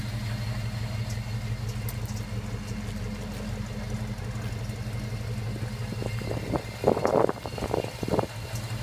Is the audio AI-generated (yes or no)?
no